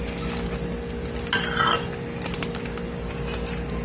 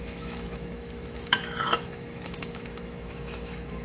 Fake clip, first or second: second